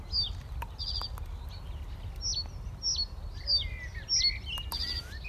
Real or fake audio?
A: real